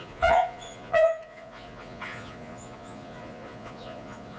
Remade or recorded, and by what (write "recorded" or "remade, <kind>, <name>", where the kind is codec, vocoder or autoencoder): remade, vocoder, Vocos